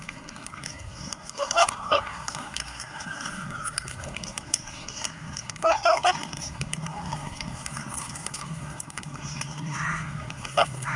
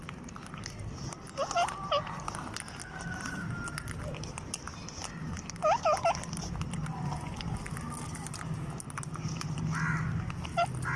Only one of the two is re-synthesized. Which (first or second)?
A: first